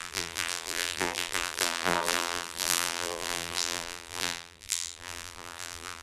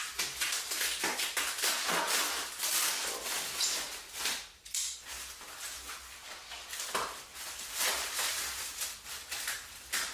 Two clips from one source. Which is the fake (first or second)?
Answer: first